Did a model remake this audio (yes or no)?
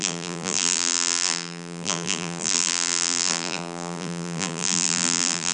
yes